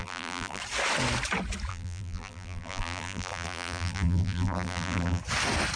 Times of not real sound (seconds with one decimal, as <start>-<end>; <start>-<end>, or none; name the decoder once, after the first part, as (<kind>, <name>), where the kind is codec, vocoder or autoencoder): 0.0-0.6 (vocoder, BigVGAN v2); 1.7-5.2